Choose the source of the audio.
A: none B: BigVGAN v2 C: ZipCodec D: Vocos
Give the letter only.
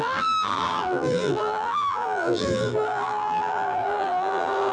B